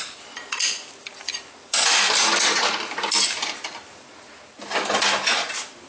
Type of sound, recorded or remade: remade